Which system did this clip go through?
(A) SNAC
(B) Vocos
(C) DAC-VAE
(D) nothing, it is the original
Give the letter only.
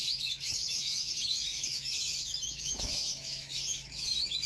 C